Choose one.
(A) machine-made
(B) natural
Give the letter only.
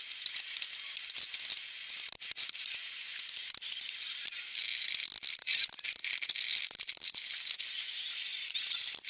B